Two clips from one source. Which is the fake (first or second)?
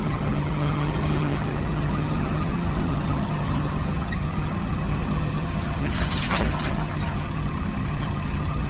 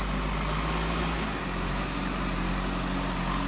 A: first